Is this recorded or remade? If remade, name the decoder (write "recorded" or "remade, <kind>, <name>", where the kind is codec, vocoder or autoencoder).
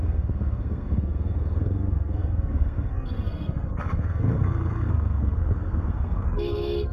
remade, codec, SNAC